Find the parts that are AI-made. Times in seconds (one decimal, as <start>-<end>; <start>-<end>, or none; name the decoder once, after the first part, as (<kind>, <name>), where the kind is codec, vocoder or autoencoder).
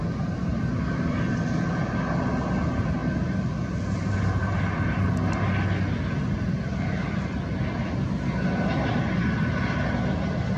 none